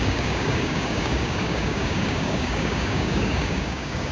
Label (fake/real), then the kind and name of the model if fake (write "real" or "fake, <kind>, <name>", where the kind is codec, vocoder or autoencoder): fake, codec, DAC